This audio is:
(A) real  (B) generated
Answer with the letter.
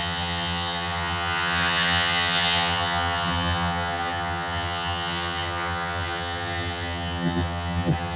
B